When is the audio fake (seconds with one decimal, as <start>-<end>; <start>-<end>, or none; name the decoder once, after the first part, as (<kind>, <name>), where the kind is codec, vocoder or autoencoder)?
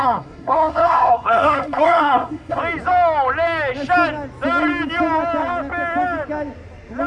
0.0-2.6 (codec, SNAC)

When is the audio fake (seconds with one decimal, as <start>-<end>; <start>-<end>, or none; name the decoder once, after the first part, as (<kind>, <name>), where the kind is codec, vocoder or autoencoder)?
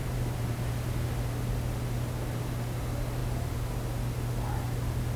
0.0-0.5 (vocoder, BigVGAN v2)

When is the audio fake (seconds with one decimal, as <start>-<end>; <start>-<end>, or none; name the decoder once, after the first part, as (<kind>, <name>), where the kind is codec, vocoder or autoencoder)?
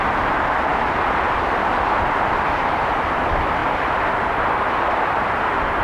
0.7-2.8 (vocoder, BigVGAN v2); 3.6-5.8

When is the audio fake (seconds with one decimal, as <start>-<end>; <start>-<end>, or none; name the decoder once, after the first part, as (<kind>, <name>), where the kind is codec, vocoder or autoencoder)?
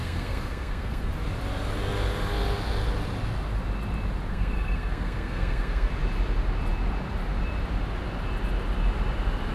0.0-1.1 (codec, SNAC); 4.3-5.9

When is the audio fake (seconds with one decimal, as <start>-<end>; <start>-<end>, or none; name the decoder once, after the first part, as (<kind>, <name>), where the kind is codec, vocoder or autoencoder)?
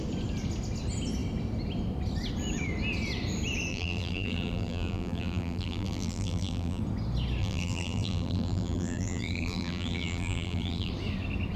3.7-6.8 (vocoder, BigVGAN v2); 7.4-10.9